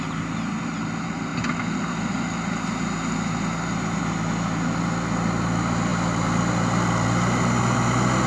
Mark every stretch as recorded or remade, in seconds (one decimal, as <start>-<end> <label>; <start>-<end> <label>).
0.0-8.3 recorded